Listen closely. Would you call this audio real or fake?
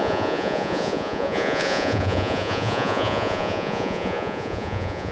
fake